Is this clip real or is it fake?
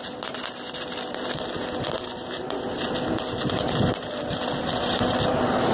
real